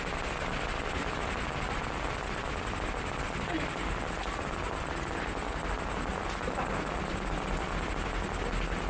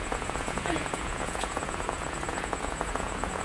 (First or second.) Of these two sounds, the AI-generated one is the second